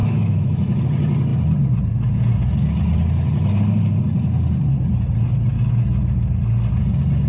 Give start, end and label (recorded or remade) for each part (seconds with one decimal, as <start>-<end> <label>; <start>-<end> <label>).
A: 0.0-0.8 remade; 0.8-7.3 recorded